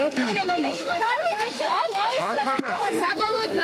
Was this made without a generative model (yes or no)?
no